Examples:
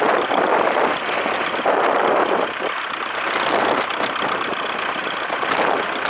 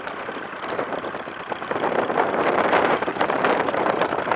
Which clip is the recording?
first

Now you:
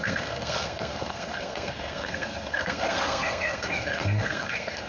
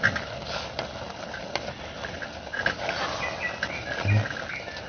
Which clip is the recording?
second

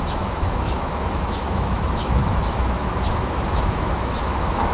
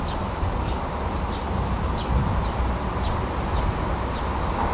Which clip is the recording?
second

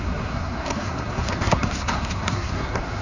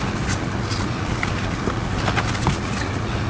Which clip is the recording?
second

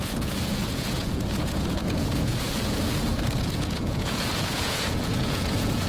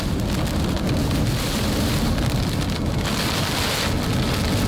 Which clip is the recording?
second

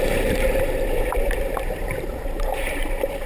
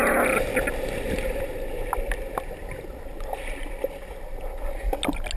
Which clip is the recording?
second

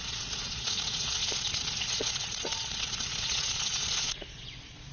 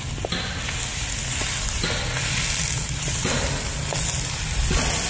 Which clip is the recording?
second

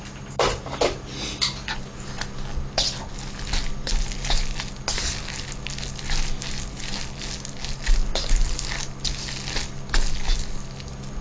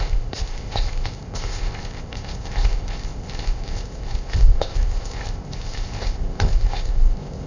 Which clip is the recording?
first